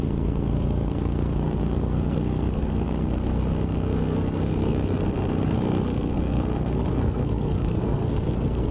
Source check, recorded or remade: remade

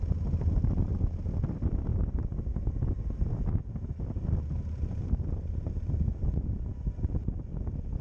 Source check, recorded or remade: recorded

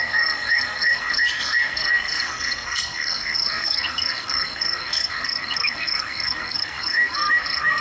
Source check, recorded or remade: remade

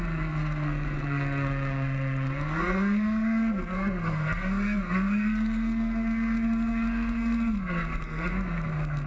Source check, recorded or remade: remade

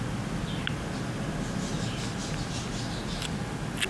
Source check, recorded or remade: recorded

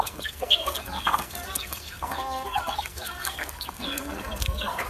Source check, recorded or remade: remade